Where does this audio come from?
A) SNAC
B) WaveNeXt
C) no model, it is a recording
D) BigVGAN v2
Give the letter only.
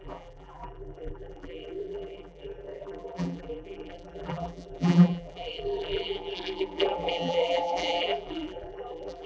D